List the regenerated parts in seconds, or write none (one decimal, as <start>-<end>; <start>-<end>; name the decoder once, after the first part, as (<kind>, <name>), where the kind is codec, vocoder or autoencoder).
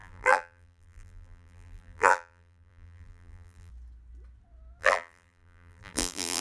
0.0-3.7 (vocoder, BigVGAN v2); 4.8-6.4